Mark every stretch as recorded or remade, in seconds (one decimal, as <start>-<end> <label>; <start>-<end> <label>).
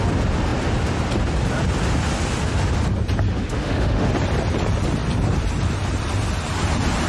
0.0-3.3 recorded; 3.3-4.1 remade; 4.1-7.1 recorded